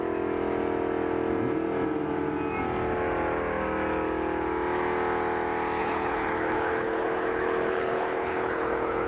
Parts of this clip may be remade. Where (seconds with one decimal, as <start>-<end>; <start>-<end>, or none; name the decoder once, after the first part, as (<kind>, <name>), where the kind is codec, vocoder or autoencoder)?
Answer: 5.8-9.1 (codec, HILCodec)